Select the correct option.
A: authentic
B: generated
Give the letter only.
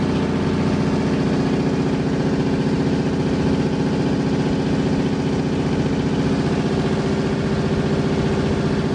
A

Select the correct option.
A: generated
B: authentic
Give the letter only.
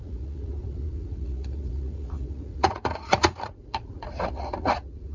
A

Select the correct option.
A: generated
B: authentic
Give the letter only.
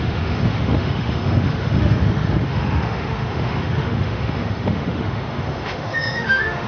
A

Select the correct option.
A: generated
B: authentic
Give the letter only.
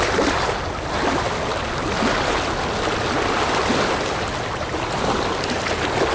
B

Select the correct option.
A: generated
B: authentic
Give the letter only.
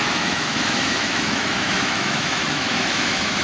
A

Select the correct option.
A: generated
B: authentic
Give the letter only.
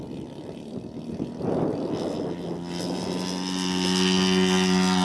B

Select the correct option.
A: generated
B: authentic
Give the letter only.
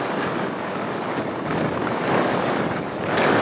A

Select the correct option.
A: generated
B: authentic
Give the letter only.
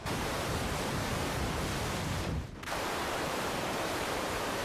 A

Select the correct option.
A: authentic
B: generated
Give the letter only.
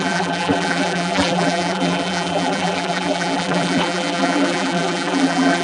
B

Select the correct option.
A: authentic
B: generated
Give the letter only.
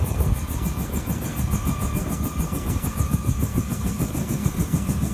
B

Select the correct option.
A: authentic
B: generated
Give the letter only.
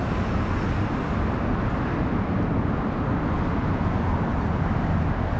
A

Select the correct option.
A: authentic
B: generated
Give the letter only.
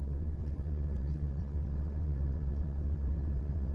B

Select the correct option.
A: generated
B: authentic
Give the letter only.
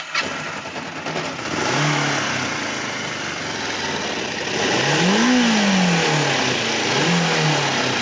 B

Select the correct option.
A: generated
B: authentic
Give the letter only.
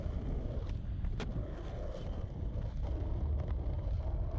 B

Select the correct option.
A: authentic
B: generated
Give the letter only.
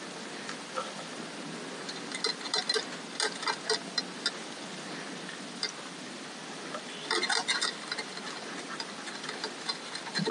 A